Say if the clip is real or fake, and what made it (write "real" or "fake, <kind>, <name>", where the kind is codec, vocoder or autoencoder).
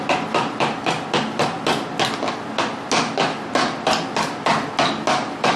real